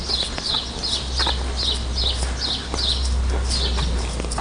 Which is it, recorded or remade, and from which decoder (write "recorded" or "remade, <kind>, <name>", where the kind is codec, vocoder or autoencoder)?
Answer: recorded